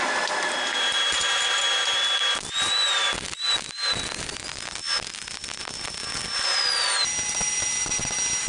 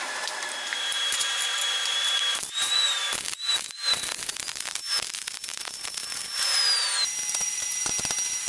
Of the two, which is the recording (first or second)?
first